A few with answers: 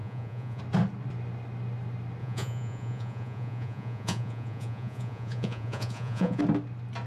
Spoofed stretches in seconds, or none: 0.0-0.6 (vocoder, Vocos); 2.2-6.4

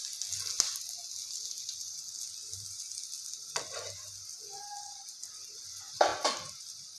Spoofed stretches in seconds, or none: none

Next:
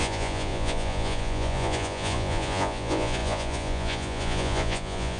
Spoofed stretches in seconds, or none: 0.0-5.2 (vocoder, Vocos)